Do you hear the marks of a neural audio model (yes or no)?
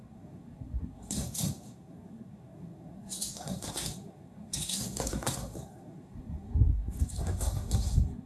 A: yes